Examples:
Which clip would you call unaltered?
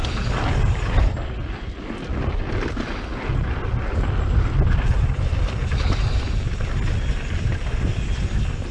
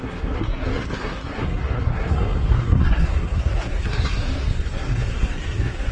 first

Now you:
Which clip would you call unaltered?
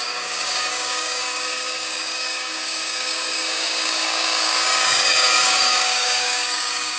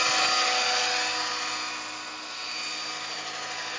second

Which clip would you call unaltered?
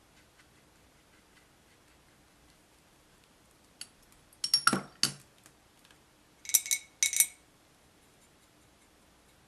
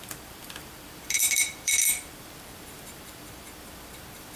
first